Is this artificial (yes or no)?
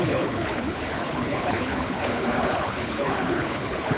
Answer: yes